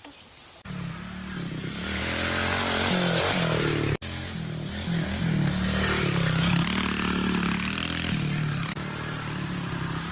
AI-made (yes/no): no